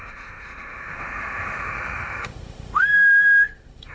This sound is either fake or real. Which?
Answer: fake